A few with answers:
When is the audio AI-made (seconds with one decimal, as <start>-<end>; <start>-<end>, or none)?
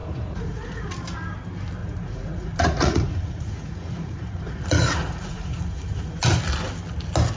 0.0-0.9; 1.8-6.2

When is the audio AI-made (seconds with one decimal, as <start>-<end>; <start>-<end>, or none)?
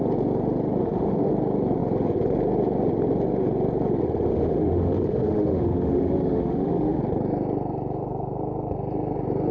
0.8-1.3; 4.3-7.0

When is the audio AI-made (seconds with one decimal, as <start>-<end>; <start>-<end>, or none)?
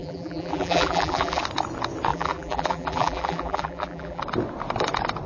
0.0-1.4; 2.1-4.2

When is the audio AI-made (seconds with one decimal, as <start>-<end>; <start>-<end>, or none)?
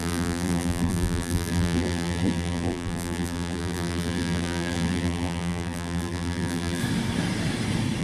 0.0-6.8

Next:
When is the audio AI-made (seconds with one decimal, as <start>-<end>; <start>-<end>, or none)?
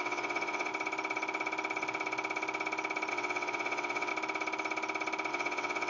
0.0-0.7; 3.1-4.1; 5.3-5.9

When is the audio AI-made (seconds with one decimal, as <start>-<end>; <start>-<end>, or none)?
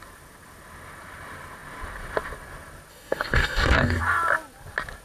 2.9-4.0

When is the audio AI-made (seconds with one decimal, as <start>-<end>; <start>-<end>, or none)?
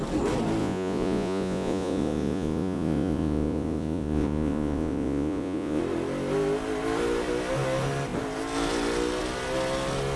0.6-5.8